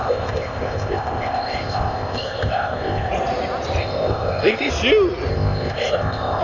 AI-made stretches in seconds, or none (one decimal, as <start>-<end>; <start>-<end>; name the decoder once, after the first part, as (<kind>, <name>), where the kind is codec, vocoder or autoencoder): 0.0-3.1 (codec, ZipCodec); 3.8-4.7; 5.3-6.4